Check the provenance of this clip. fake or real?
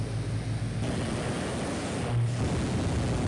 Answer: real